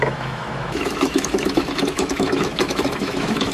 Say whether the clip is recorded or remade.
remade